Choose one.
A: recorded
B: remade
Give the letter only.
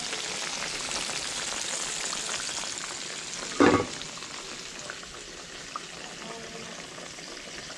A